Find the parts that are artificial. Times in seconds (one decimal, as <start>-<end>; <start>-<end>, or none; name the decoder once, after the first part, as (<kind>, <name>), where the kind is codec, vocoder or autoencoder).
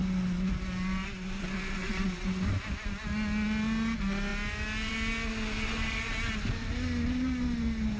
none